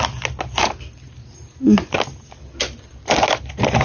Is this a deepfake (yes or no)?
no